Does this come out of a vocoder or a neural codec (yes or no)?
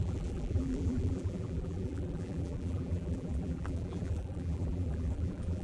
yes